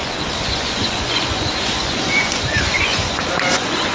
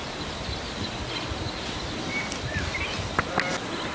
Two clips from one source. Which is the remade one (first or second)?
first